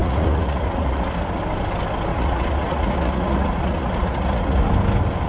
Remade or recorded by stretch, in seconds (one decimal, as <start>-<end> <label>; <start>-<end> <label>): 0.0-1.4 remade; 1.4-2.1 recorded; 2.1-4.6 remade; 4.6-5.3 recorded